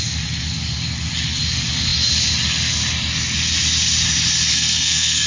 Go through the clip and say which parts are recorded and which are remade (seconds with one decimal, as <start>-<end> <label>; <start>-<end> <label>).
0.0-4.5 recorded; 4.5-5.3 remade